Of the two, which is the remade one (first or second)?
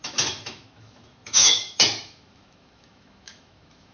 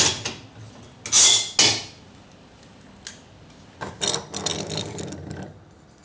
first